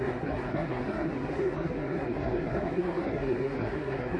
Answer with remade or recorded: remade